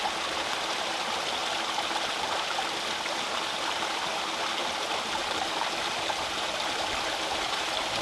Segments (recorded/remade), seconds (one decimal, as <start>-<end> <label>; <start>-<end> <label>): 0.0-8.0 recorded